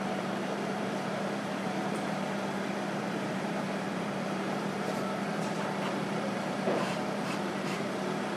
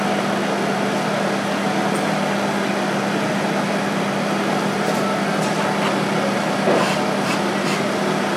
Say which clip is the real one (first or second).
second